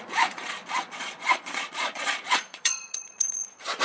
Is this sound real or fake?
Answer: fake